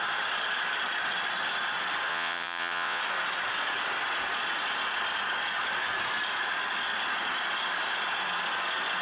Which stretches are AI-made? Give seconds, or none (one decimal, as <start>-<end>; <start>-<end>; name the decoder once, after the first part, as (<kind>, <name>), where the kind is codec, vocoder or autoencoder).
2.1-3.0 (vocoder, WaveNeXt)